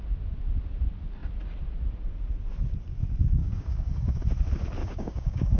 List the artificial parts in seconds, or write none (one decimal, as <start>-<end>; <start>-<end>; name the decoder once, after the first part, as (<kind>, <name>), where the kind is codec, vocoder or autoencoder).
3.4-4.2 (codec, DAC); 4.8-5.6